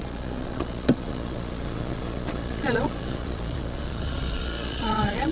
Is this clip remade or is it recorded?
remade